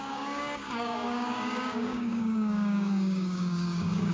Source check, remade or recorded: remade